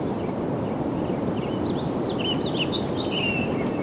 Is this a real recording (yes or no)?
yes